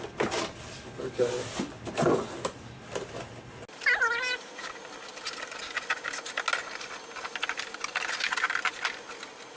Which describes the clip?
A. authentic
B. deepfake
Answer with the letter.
A